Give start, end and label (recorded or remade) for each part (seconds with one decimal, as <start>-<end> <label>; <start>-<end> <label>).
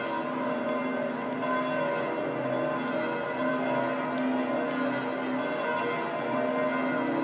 0.0-7.2 recorded